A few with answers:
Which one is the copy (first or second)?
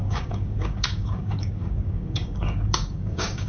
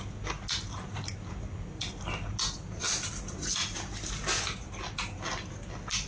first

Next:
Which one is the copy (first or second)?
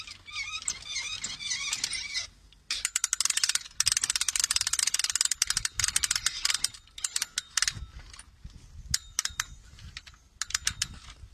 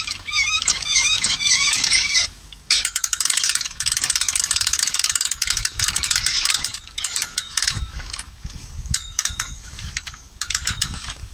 second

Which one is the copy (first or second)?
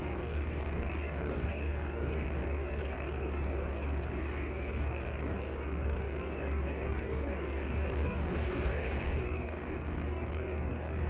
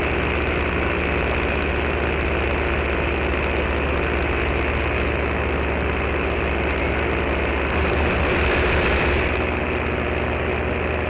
first